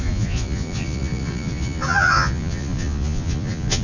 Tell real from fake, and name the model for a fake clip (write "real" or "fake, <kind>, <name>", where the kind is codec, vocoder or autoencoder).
fake, vocoder, Vocos